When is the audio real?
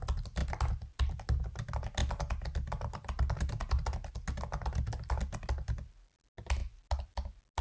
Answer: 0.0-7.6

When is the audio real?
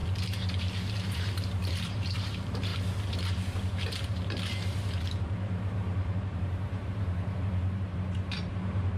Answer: 0.0-0.8; 2.7-3.3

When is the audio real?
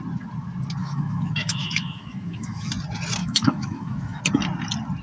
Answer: 0.0-0.8; 2.7-3.2; 4.2-5.0